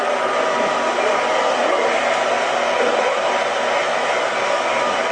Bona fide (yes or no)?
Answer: yes